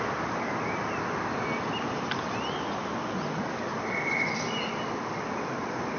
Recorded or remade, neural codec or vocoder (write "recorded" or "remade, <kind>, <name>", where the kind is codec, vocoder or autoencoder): recorded